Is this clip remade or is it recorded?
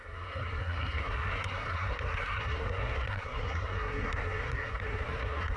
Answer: remade